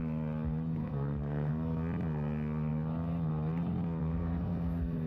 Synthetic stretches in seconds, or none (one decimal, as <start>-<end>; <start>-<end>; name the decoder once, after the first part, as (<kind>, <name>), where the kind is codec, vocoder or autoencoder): 0.8-1.5 (codec, SNAC); 4.0-5.1